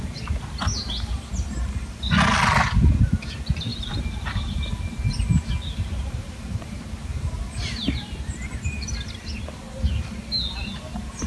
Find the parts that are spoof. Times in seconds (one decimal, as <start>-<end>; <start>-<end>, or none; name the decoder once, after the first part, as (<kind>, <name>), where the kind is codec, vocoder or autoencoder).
3.7-8.1 (vocoder, BigVGAN v2)